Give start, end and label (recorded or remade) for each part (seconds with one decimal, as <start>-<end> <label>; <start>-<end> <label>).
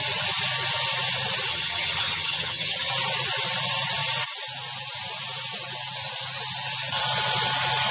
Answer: 0.0-1.5 recorded; 1.5-2.9 remade; 2.9-7.9 recorded